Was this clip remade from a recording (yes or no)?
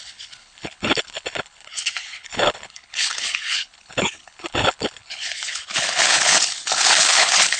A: yes